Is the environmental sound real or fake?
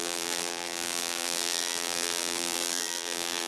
fake